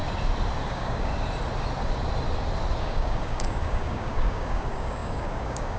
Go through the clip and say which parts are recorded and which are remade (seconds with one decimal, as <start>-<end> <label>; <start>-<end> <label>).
0.0-0.7 recorded; 0.7-1.1 remade; 1.1-2.8 recorded; 2.8-5.8 remade

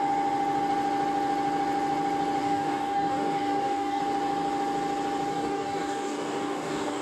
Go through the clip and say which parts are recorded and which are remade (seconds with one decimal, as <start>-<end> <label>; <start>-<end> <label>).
0.0-2.4 recorded; 2.4-4.0 remade; 4.0-5.3 recorded; 5.3-7.0 remade

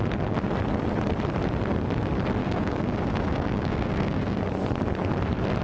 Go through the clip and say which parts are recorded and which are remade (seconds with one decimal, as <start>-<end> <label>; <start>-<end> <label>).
0.0-2.4 recorded; 2.4-4.4 remade; 4.4-5.6 recorded

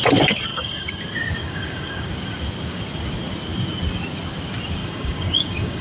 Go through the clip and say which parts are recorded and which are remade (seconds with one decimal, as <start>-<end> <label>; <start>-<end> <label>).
0.0-0.5 recorded; 0.5-1.0 remade; 1.0-1.4 recorded; 1.4-2.1 remade; 2.1-4.8 recorded; 4.8-5.8 remade